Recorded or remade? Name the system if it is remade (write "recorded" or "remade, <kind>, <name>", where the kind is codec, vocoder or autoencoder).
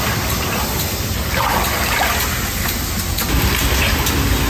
recorded